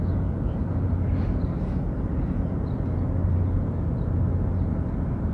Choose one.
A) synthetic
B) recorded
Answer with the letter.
B